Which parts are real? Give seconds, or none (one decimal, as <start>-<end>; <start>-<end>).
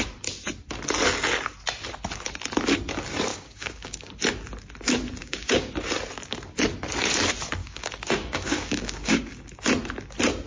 0.0-3.3; 4.1-5.2; 5.7-7.6; 9.4-10.5